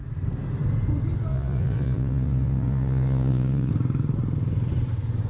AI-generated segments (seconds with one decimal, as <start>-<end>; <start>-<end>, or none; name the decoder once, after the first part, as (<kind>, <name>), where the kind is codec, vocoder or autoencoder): 1.3-3.7 (vocoder, Vocos)